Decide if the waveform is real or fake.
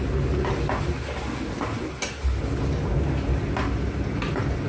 real